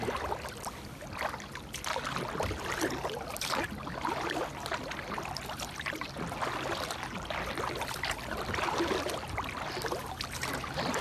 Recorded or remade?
recorded